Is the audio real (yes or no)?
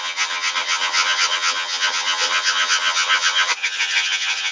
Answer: no